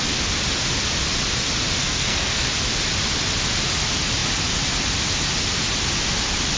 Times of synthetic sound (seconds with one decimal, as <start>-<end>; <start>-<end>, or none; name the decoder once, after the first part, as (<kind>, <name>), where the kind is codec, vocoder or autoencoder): 1.8-2.5 (codec, SNAC)